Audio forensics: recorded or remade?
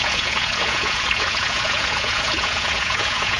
remade